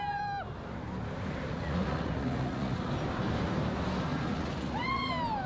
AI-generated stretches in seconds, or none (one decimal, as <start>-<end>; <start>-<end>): 1.5-2.9; 4.1-5.1